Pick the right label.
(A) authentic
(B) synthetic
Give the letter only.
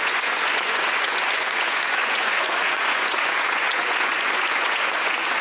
B